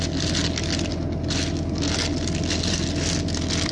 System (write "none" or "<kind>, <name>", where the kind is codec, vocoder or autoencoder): none